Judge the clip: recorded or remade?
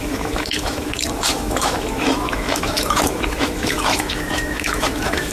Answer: remade